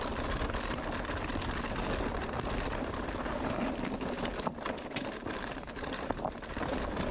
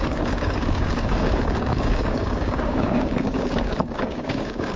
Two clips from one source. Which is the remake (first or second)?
second